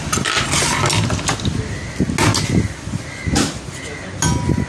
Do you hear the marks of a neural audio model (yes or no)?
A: no